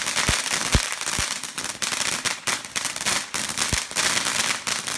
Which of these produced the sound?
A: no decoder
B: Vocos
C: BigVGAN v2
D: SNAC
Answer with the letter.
A